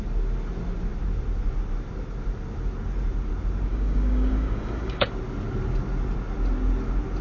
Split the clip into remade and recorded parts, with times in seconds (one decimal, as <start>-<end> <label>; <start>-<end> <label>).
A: 0.0-3.7 recorded; 3.7-5.1 remade; 5.1-7.2 recorded